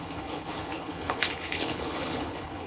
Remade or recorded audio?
remade